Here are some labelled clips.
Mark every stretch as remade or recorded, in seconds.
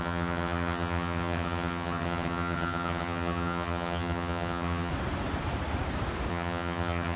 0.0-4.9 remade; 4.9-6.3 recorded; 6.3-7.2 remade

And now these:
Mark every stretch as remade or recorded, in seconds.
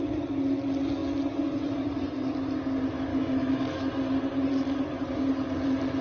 0.0-3.1 recorded; 3.1-3.9 remade; 3.9-6.0 recorded